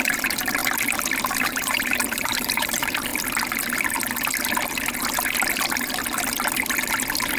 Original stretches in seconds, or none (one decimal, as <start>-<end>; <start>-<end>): 0.6-1.3; 3.1-7.4